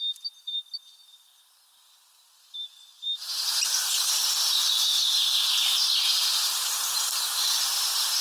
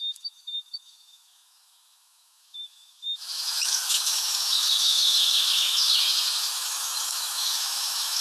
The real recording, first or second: first